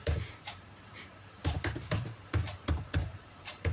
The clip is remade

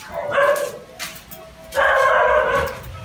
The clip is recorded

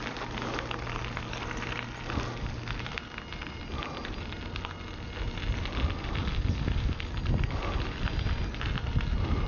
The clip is recorded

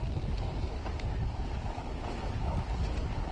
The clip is recorded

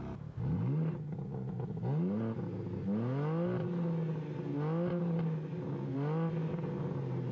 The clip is recorded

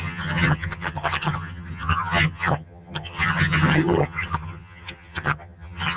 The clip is remade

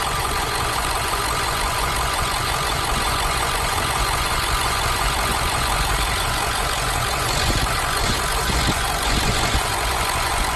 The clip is remade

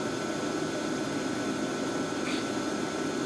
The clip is remade